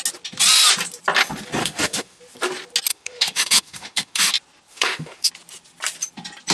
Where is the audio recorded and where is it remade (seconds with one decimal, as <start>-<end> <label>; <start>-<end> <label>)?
0.0-1.6 recorded; 1.6-2.2 remade; 2.2-2.9 recorded; 2.9-4.3 remade; 4.3-4.7 recorded; 4.7-5.3 remade; 5.3-6.5 recorded

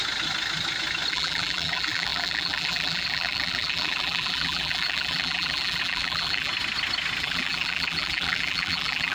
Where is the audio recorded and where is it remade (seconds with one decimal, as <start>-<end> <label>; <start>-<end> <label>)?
0.0-1.1 recorded; 1.1-6.5 remade; 6.5-7.2 recorded; 7.2-9.1 remade

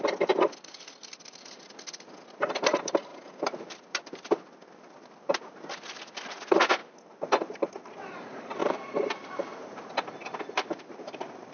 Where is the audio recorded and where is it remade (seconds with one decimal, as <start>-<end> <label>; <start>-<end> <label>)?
0.0-8.6 recorded; 8.6-9.9 remade; 9.9-11.5 recorded